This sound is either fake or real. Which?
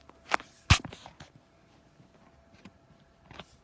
real